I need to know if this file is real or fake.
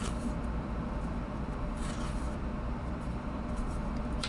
fake